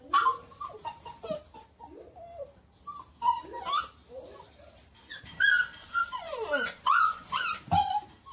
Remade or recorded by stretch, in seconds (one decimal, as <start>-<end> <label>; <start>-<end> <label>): 0.0-5.8 recorded; 5.8-7.5 remade; 7.5-8.3 recorded

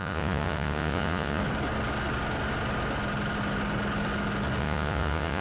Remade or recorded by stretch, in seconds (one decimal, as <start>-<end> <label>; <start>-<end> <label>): 0.0-1.4 remade; 1.4-4.6 recorded; 4.6-5.4 remade

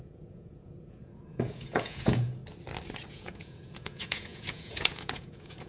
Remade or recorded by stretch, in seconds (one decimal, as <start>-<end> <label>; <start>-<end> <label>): 0.0-2.4 remade; 2.4-3.1 recorded; 3.1-5.7 remade

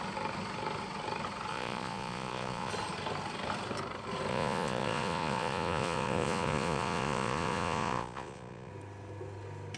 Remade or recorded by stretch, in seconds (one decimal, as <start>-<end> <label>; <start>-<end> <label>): 0.0-1.5 recorded; 1.5-2.7 remade; 2.7-4.3 recorded; 4.3-8.7 remade; 8.7-9.8 recorded

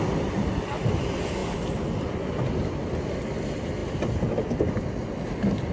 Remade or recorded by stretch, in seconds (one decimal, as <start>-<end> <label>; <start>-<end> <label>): 0.0-5.7 recorded

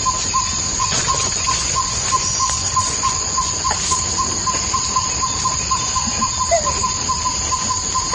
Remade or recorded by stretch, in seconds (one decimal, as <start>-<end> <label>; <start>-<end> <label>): 0.0-0.7 recorded; 0.7-3.7 remade; 3.7-8.1 recorded

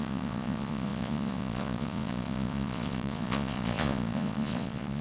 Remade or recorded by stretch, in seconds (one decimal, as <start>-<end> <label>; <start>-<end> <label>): 0.0-5.0 remade

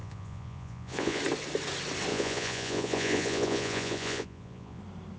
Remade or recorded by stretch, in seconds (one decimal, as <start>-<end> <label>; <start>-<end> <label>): 0.0-1.2 remade; 1.2-2.1 recorded; 2.1-4.8 remade; 4.8-5.2 recorded